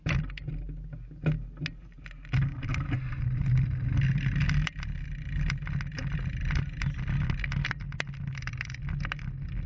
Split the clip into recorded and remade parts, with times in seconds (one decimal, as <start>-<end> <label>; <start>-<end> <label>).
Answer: 0.0-9.7 recorded